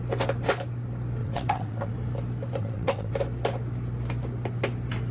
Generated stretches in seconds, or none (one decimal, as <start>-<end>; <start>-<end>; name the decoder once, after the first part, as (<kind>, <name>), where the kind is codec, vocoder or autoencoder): 1.2-1.9 (vocoder, WaveNeXt); 2.6-3.1